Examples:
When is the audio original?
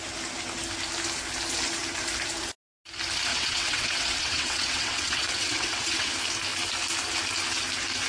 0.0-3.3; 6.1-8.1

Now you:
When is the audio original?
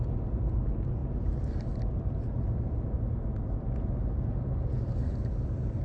0.0-5.8